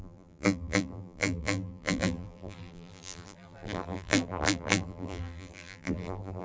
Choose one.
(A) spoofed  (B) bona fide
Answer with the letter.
A